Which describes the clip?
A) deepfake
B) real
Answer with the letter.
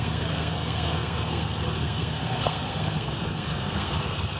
A